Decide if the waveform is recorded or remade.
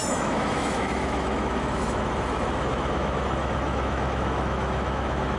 remade